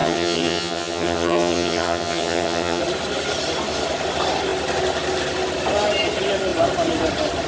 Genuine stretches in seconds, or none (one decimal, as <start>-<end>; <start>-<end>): 2.8-7.5